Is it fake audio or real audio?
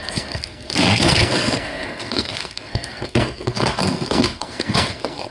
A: fake